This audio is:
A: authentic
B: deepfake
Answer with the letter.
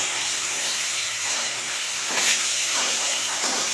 B